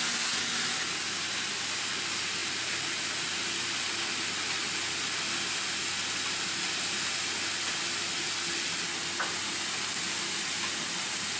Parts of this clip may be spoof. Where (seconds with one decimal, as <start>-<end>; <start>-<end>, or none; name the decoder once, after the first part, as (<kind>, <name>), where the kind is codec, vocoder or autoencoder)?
none